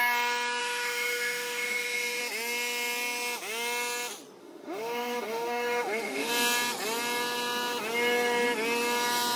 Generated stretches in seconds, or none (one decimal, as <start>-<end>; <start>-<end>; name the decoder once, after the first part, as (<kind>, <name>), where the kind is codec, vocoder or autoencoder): 0.6-2.2 (autoencoder, DAC-VAE); 4.4-6.3